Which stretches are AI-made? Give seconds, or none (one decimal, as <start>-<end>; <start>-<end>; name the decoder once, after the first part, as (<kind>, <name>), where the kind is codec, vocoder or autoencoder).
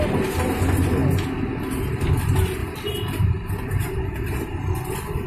none